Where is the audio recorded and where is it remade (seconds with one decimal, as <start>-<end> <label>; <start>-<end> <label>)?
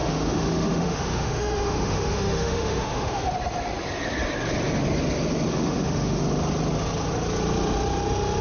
0.0-3.3 remade; 3.3-5.5 recorded; 5.5-6.2 remade; 6.2-8.4 recorded